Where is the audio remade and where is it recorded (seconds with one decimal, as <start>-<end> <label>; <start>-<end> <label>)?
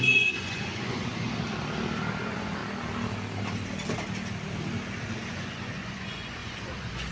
0.0-1.1 remade; 1.1-2.2 recorded; 2.2-2.6 remade; 2.6-5.3 recorded; 5.3-7.1 remade